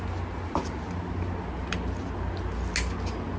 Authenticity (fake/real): real